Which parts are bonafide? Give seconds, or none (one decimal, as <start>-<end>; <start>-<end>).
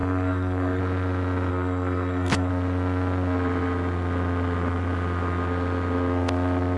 0.8-1.5; 2.5-6.8